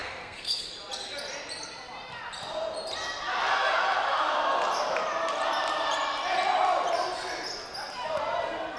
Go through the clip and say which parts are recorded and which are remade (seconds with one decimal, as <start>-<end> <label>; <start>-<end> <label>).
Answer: 0.0-0.7 remade; 0.7-8.8 recorded